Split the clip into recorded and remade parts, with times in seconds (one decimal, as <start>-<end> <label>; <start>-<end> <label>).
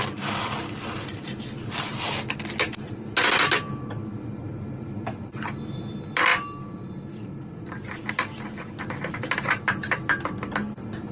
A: 0.0-11.1 recorded